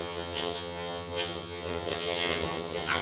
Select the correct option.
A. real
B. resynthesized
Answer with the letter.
B